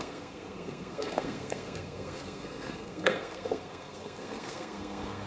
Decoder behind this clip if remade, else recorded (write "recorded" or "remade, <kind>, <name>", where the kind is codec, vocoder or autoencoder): remade, codec, SNAC